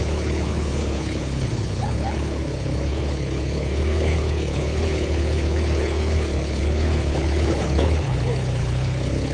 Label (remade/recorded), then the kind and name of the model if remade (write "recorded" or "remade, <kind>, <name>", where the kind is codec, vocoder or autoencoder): remade, codec, HILCodec